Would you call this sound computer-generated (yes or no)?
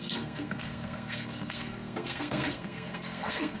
yes